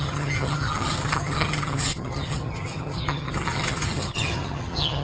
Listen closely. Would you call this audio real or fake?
fake